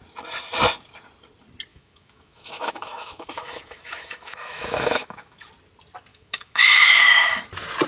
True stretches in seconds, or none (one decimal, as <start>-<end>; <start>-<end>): 0.0-1.7; 5.5-6.1; 7.4-7.9